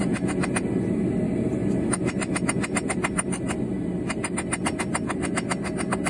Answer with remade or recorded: recorded